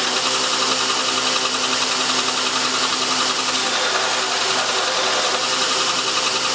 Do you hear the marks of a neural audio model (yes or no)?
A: no